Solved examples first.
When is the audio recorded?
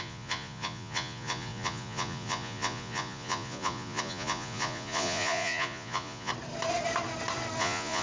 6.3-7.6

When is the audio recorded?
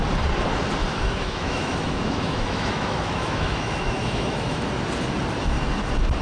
0.0-1.0; 4.7-6.2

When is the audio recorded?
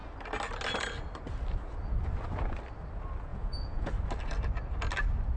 0.0-3.3; 3.9-5.4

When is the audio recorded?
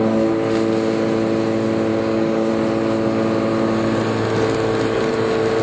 0.0-1.9; 2.5-5.6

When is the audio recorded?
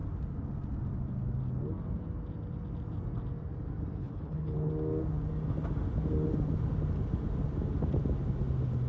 0.0-4.0; 4.7-8.9